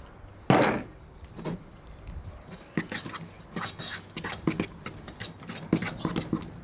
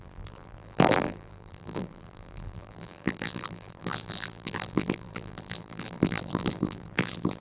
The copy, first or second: second